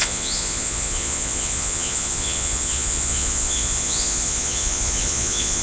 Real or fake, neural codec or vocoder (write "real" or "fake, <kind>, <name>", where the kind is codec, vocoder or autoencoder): fake, vocoder, Vocos